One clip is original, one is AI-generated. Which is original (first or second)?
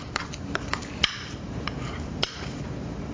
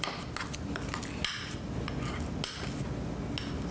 second